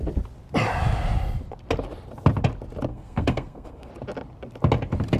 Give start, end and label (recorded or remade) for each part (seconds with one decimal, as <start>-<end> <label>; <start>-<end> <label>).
0.0-2.9 recorded; 2.9-3.9 remade; 3.9-5.2 recorded